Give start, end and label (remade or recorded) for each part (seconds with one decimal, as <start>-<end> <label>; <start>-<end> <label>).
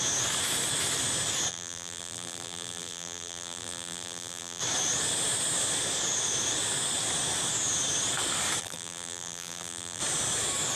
0.0-1.5 recorded; 1.5-4.6 remade; 4.6-8.6 recorded; 8.6-10.0 remade; 10.0-10.8 recorded